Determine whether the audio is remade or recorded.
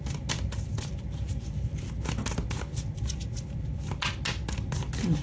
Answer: recorded